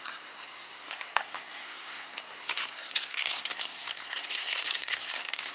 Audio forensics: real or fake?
fake